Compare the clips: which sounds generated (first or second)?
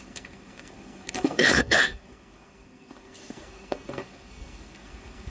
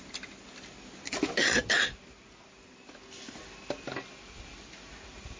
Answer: first